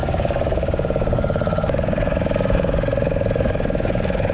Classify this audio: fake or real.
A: fake